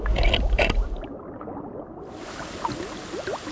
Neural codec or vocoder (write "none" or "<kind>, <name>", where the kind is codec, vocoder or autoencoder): none